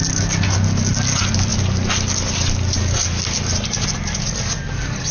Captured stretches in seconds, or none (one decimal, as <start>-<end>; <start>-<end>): 0.0-5.1